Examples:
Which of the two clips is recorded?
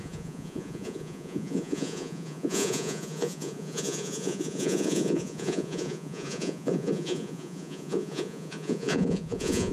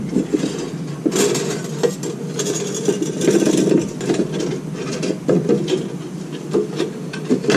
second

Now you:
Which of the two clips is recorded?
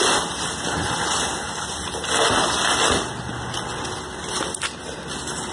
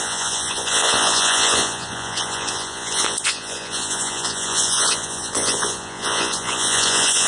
first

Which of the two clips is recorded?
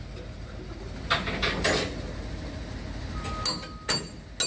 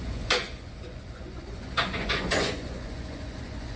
first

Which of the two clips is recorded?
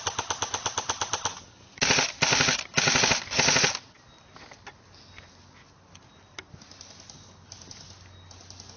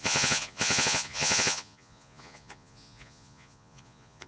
first